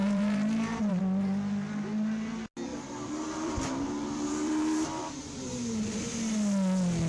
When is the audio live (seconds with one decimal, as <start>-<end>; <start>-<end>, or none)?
1.0-2.7; 5.2-7.1